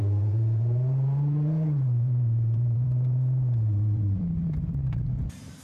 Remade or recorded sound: remade